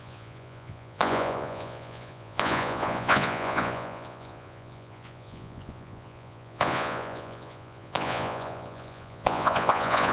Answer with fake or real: fake